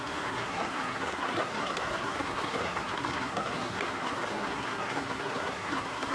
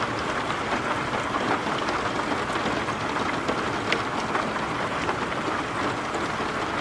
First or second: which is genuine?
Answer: second